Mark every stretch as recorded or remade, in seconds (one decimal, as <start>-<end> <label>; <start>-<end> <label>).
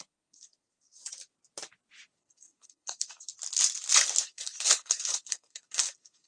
0.0-1.0 remade; 1.0-2.2 recorded; 2.2-3.3 remade; 3.3-4.2 recorded; 4.2-6.3 remade